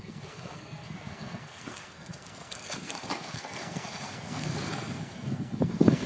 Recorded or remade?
remade